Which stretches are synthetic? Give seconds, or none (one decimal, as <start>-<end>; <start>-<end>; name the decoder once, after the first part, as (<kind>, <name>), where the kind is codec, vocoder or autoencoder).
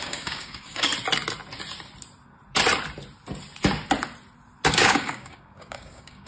0.0-0.9 (codec, DAC); 4.7-6.3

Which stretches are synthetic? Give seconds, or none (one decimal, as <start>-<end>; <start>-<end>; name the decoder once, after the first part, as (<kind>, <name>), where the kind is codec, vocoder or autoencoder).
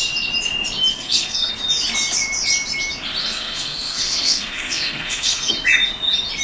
0.9-1.5 (codec, SNAC); 3.2-5.5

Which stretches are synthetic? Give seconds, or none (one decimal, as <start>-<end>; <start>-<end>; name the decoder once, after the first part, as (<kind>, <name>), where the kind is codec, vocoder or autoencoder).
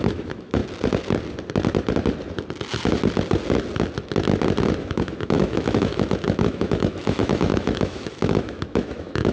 0.0-0.6 (autoencoder, DAC-VAE); 4.8-9.3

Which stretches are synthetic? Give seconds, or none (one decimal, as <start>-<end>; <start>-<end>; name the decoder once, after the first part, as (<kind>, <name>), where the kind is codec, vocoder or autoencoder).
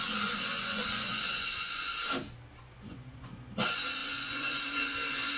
0.0-1.9 (vocoder, Vocos); 2.6-5.4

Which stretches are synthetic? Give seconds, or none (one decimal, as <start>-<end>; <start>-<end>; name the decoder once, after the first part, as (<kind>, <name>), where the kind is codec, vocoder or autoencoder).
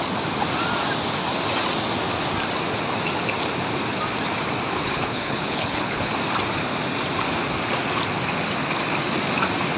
4.8-6.1 (codec, HILCodec)